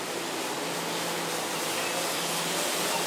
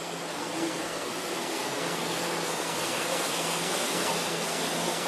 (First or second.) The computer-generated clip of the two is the second